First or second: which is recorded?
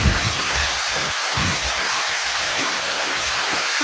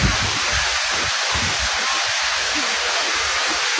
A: second